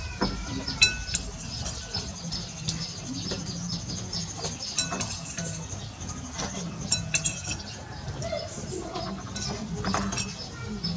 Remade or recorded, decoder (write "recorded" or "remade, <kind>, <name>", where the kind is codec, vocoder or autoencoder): recorded